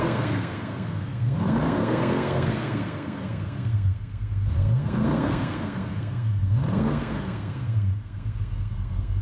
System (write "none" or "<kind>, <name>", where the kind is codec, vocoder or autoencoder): codec, SNAC